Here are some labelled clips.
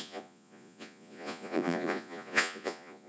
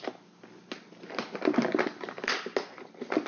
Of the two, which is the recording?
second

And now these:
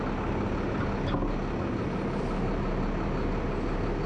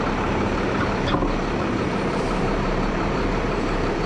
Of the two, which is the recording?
first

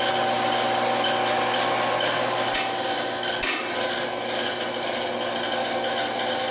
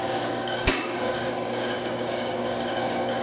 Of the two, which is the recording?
first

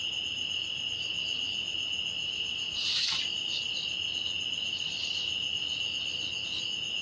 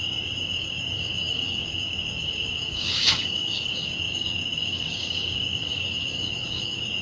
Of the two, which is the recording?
first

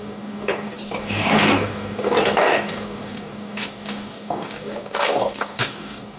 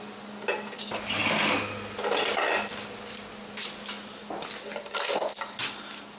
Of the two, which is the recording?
second